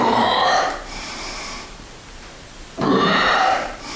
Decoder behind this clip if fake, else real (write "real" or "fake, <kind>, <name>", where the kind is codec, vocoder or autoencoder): fake, vocoder, BigVGAN v2